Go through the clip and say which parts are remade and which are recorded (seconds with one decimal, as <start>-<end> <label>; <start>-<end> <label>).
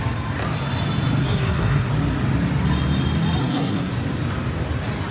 0.0-1.2 recorded; 1.2-1.9 remade; 1.9-3.4 recorded; 3.4-3.9 remade; 3.9-5.1 recorded